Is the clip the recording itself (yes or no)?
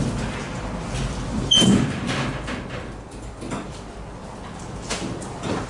no